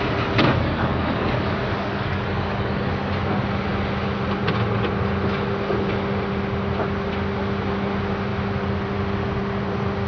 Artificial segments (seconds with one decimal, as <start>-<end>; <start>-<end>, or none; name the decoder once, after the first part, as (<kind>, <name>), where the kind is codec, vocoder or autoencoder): 0.5-2.9 (codec, DAC)